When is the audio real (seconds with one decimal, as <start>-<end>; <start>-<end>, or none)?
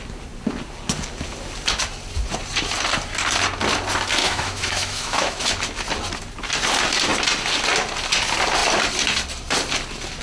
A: 0.0-4.2; 5.4-10.2